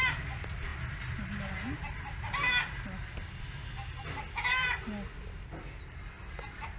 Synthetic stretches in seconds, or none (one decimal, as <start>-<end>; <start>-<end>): none